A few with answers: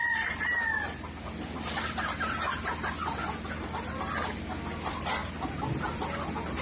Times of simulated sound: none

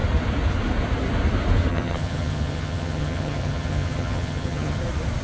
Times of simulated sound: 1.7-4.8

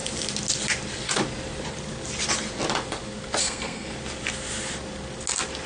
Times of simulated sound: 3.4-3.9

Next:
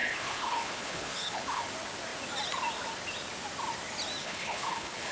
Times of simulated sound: 0.0-1.6; 4.2-5.1

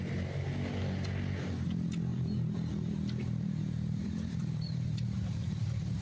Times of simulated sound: 2.1-6.0